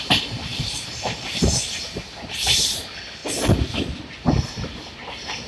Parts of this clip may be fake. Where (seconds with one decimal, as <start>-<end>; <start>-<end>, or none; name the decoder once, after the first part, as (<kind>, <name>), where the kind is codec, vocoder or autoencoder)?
0.5-2.8 (vocoder, BigVGAN v2)